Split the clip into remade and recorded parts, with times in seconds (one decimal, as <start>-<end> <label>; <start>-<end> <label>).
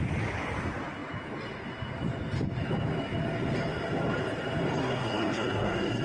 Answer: 0.0-4.8 recorded; 4.8-6.0 remade